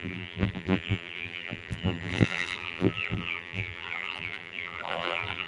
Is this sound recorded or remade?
remade